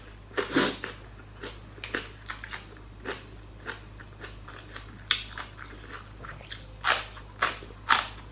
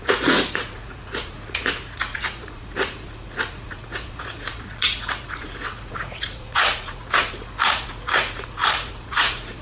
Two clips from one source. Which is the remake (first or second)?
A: second